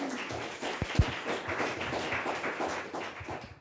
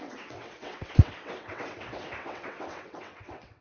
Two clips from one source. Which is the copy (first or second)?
second